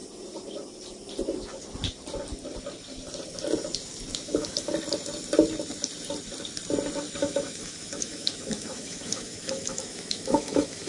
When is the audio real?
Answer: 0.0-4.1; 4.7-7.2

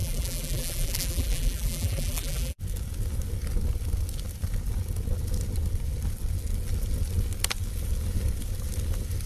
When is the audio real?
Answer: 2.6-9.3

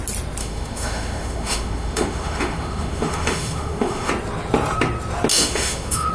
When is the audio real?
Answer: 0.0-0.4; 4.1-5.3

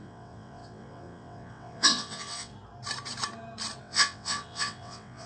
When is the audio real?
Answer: 2.5-3.8